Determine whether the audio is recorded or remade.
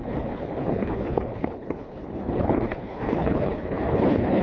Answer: remade